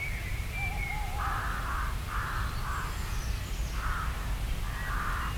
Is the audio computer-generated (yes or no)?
no